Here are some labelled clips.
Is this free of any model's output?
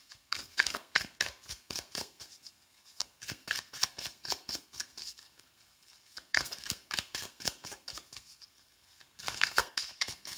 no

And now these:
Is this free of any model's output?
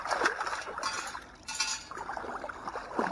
yes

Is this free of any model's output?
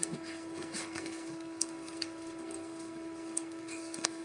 no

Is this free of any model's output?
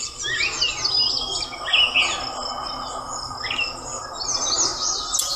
yes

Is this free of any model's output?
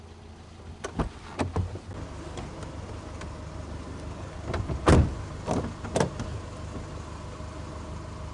yes